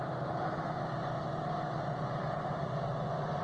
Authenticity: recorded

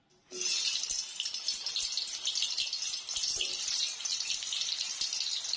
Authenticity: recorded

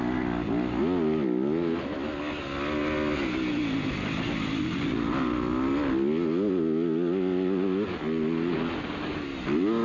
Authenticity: recorded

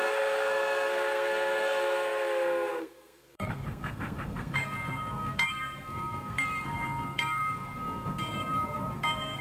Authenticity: remade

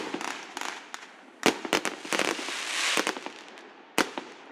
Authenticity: recorded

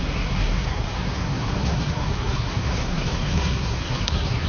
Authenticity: remade